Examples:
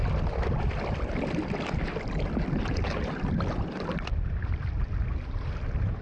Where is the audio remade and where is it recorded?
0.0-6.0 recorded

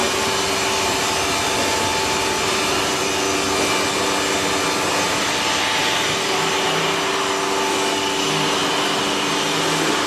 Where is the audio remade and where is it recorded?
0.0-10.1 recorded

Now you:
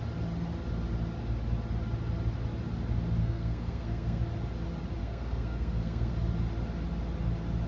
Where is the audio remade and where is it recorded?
0.0-3.2 recorded; 3.2-4.2 remade; 4.2-5.0 recorded; 5.0-6.1 remade; 6.1-7.7 recorded

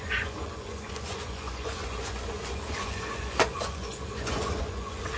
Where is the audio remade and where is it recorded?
0.0-5.2 remade

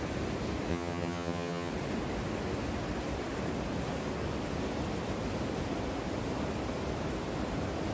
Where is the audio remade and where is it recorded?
0.0-0.7 recorded; 0.7-1.7 remade; 1.7-7.9 recorded

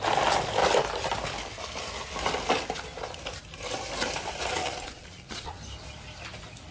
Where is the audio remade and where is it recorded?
0.0-4.6 recorded; 4.6-5.6 remade; 5.6-6.7 recorded